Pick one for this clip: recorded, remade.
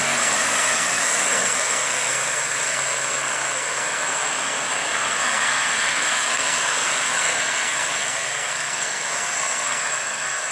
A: remade